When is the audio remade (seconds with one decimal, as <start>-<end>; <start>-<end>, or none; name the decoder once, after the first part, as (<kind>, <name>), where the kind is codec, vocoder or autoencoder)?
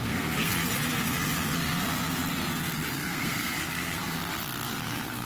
0.0-0.5 (codec, SNAC); 2.9-4.2; 4.8-5.3